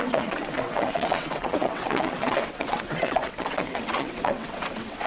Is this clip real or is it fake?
fake